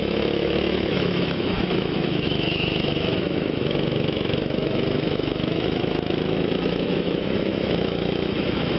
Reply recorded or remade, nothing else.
remade